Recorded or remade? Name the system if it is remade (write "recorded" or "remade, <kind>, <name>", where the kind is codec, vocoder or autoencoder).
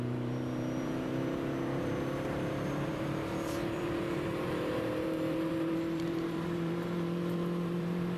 remade, vocoder, BigVGAN v2